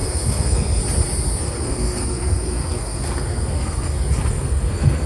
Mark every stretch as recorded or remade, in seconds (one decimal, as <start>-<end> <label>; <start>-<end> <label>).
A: 0.0-0.8 remade; 0.8-1.4 recorded; 1.4-5.1 remade

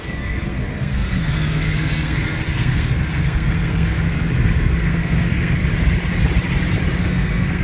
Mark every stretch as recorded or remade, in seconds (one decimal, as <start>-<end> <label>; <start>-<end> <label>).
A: 0.0-5.6 remade; 5.6-7.0 recorded; 7.0-7.6 remade

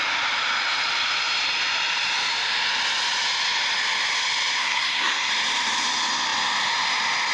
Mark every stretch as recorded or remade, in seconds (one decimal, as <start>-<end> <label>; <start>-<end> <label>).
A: 0.0-4.6 recorded; 4.6-5.3 remade; 5.3-7.3 recorded

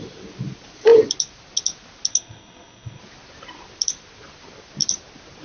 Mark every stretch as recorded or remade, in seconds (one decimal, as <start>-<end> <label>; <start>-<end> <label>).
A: 0.0-2.1 recorded; 2.1-3.0 remade; 3.0-5.4 recorded

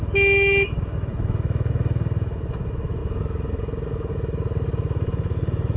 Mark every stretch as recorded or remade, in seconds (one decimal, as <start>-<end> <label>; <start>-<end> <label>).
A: 0.0-5.8 remade